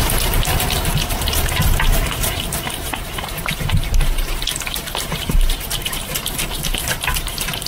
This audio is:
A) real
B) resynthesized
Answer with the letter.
A